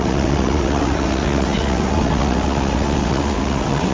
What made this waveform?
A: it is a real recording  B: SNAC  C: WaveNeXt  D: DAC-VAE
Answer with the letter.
C